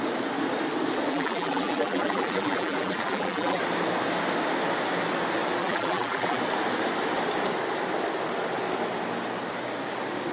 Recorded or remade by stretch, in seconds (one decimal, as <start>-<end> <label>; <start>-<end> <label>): 0.0-1.1 recorded; 1.1-3.6 remade; 3.6-5.6 recorded; 5.6-6.4 remade; 6.4-10.3 recorded